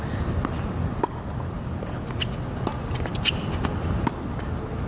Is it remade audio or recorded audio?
recorded